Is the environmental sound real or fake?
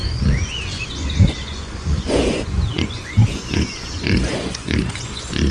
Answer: fake